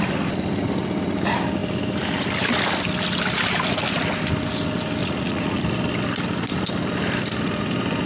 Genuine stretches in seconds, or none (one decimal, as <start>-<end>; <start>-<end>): 0.0-5.0; 5.6-8.1